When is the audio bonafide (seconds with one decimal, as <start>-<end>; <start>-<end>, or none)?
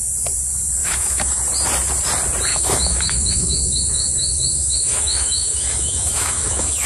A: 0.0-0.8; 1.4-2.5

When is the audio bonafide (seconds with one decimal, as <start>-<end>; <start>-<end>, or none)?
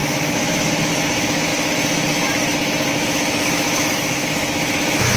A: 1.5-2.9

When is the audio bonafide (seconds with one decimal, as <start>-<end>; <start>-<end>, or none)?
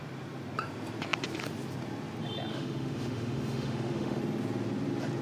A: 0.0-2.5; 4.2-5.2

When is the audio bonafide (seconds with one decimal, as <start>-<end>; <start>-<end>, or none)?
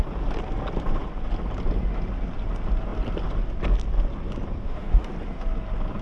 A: 0.0-4.6; 5.1-6.0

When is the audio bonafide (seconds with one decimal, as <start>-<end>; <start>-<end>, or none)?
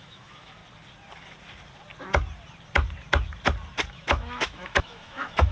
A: 0.6-3.9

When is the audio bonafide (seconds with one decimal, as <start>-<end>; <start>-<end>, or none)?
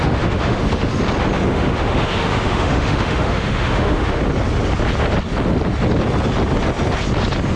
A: 0.9-1.5; 4.2-7.6